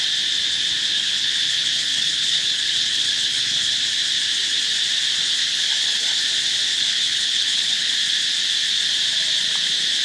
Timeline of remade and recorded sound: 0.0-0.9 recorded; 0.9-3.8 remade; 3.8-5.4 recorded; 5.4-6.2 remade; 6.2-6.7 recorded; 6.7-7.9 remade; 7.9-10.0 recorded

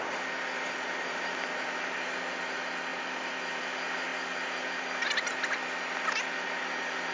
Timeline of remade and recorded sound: 0.0-7.1 recorded

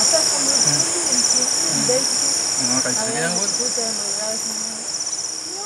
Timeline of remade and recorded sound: 0.0-5.7 recorded

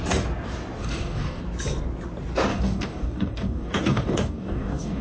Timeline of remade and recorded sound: 0.0-0.8 recorded; 0.8-1.4 remade; 1.4-2.5 recorded; 2.5-5.0 remade

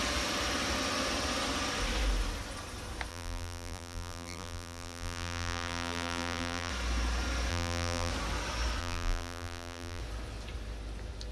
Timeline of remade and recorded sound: 0.0-3.1 recorded; 3.1-6.7 remade; 6.7-7.5 recorded; 7.5-8.1 remade; 8.1-8.8 recorded; 8.8-10.0 remade; 10.0-11.3 recorded

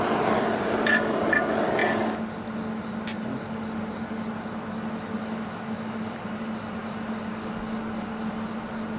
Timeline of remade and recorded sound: 0.0-9.0 recorded

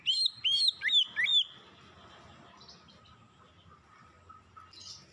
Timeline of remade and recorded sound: 0.0-5.1 recorded